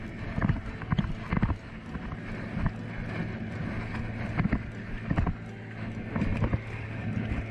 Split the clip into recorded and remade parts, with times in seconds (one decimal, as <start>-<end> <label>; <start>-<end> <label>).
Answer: 0.0-7.5 recorded